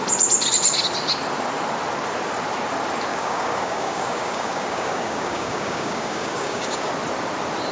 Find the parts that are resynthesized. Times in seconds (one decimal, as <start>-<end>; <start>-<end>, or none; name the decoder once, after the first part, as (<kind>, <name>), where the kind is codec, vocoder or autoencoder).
3.1-6.9 (codec, DAC)